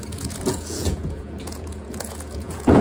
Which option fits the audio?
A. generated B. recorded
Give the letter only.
A